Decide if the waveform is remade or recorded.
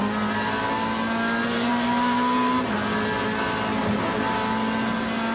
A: recorded